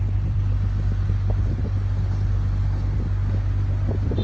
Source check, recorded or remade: remade